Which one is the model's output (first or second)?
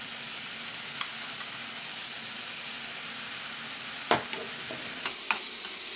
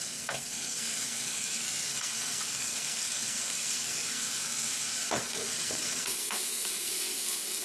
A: second